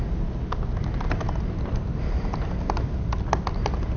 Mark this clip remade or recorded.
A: recorded